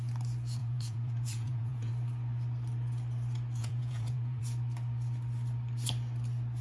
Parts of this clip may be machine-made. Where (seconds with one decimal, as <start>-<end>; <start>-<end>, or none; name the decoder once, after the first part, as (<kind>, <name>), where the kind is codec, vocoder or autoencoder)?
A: 0.6-1.9 (vocoder, Vocos); 3.6-4.4